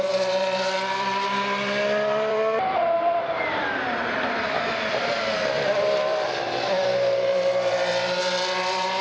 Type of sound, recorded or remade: remade